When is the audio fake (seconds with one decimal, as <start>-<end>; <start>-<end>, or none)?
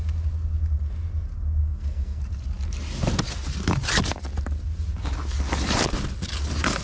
1.6-2.2